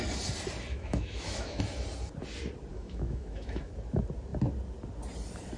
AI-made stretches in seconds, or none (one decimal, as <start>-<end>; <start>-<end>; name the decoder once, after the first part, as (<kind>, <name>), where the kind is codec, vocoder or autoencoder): 0.7-1.6 (autoencoder, DAC-VAE); 2.7-3.7